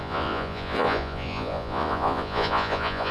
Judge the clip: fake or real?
fake